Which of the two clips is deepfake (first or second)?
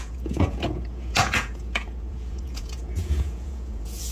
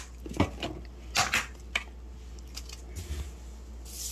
first